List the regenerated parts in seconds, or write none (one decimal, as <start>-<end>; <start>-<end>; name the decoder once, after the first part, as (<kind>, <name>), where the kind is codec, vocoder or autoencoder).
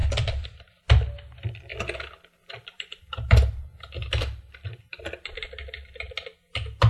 0.0-0.8 (vocoder, BigVGAN v2); 1.7-5.8